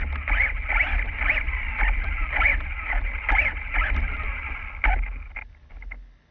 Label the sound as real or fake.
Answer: real